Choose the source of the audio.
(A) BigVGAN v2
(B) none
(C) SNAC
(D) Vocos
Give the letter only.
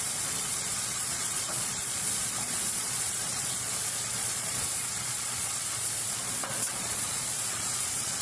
D